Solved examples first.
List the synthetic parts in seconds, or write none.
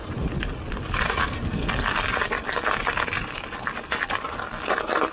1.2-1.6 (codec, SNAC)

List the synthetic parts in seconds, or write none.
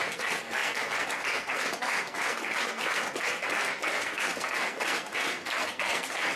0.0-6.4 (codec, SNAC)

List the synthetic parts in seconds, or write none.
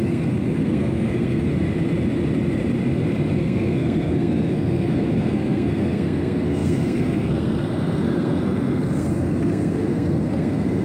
0.0-1.5 (codec, SNAC); 3.3-10.8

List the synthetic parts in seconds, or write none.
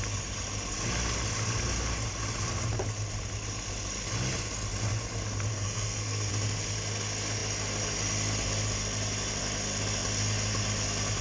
5.5-6.3 (codec, SNAC)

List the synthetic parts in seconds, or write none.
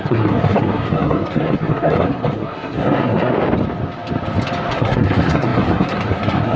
0.0-3.3 (codec, SNAC); 4.7-6.6